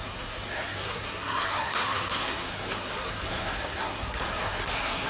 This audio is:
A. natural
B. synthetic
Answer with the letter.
B